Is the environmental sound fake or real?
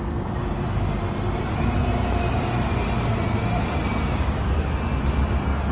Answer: real